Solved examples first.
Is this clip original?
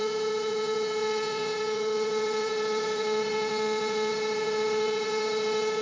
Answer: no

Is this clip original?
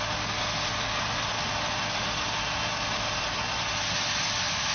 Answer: yes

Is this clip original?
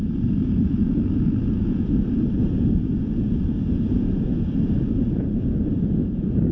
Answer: no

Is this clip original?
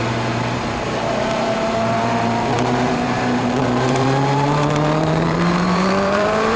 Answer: no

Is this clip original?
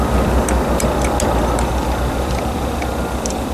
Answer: yes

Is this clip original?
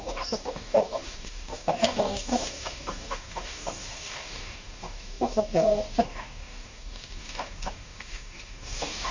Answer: no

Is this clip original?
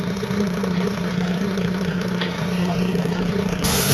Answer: no